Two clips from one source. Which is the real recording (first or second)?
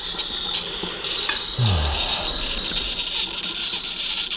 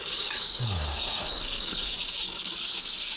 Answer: first